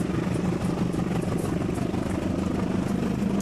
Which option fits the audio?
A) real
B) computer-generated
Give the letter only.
A